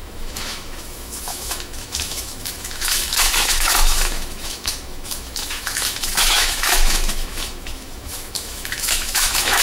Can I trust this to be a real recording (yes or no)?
no